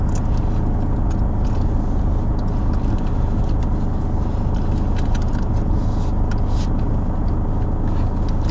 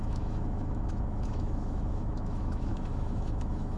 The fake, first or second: second